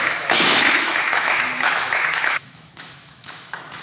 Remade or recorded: remade